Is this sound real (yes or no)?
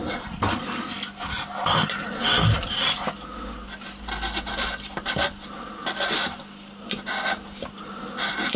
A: yes